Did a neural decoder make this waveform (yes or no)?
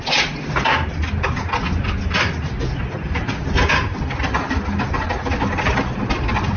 no